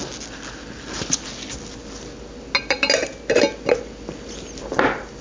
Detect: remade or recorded recorded